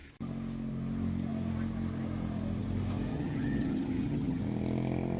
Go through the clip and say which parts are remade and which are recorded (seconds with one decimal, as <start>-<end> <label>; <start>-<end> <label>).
0.0-3.1 recorded; 3.1-4.4 remade; 4.4-5.2 recorded